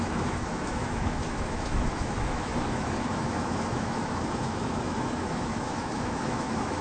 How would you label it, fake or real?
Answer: fake